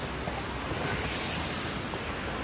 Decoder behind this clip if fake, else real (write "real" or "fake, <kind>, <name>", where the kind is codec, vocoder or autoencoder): real